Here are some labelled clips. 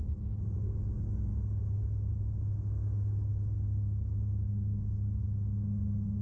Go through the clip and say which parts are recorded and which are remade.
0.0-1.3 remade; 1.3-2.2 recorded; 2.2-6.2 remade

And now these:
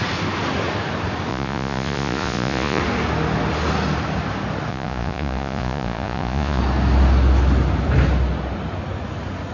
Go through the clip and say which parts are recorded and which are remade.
0.0-1.3 recorded; 1.3-2.8 remade; 2.8-4.7 recorded; 4.7-6.6 remade; 6.6-9.5 recorded

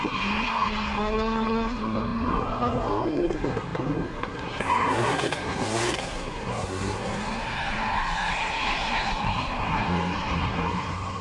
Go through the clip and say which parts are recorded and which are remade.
0.0-11.2 remade

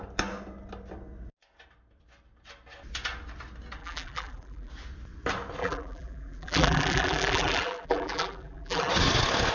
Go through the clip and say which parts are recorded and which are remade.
0.0-3.8 recorded; 3.8-4.7 remade; 4.7-5.6 recorded; 5.6-8.9 remade; 8.9-9.5 recorded

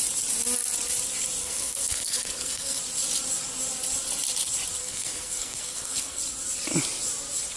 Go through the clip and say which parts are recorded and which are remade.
0.0-1.4 recorded; 1.4-2.8 remade; 2.8-4.8 recorded; 4.8-6.2 remade; 6.2-7.6 recorded

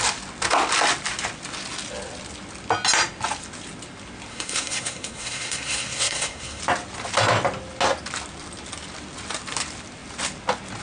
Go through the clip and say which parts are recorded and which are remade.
0.0-4.3 recorded; 4.3-6.6 remade; 6.6-10.8 recorded